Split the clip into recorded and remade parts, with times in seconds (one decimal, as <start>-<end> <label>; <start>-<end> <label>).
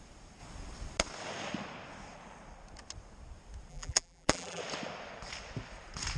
0.0-3.7 recorded; 3.7-4.6 remade; 4.6-6.2 recorded